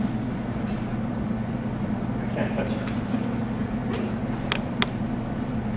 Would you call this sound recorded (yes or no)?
yes